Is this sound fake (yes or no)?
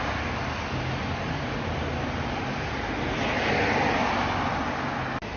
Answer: no